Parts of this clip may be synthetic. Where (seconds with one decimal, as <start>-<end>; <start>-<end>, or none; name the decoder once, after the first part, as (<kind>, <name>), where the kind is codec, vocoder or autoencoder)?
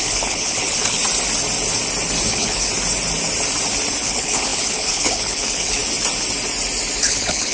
0.0-1.0 (codec, HILCodec); 2.3-2.7; 4.0-5.8; 7.0-7.5